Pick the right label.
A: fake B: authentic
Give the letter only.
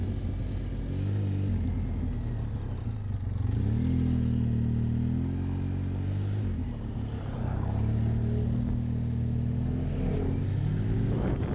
B